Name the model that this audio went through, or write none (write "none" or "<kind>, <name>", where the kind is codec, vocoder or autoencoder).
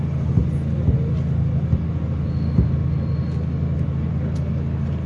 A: none